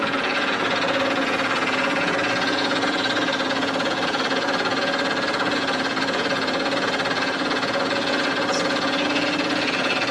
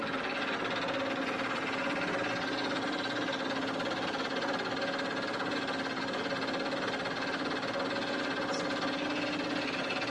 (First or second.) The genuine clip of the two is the second